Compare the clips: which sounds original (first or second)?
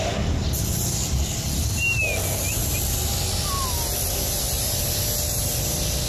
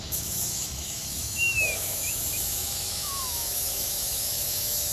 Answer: first